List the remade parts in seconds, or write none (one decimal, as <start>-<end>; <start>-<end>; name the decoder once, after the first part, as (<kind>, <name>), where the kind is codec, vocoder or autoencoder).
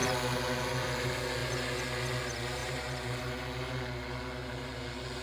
2.6-3.2 (vocoder, BigVGAN v2)